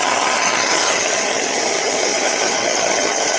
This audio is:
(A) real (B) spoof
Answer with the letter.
B